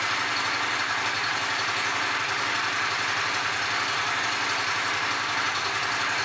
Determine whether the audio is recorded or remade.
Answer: recorded